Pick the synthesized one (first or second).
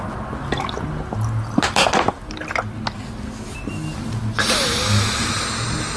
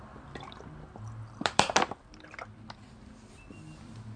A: second